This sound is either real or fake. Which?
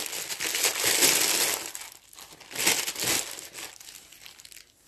real